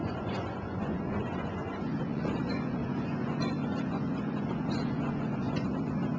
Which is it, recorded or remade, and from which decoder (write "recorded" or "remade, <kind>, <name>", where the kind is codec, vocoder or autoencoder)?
remade, vocoder, Vocos